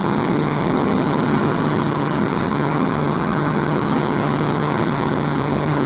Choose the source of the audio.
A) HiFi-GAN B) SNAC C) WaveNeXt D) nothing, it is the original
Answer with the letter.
A